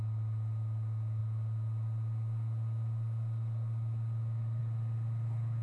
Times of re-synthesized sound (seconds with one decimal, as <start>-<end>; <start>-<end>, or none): none